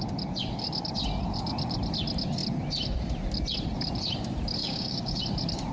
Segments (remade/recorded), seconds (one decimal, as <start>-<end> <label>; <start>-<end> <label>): 0.0-4.6 recorded; 4.6-5.2 remade; 5.2-5.7 recorded